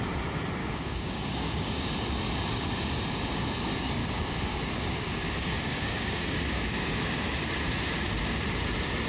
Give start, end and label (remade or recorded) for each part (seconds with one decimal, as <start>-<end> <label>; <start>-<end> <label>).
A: 0.0-0.6 recorded; 0.6-1.9 remade; 1.9-4.0 recorded; 4.0-6.9 remade; 6.9-9.1 recorded